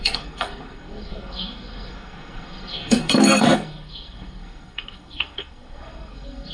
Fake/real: fake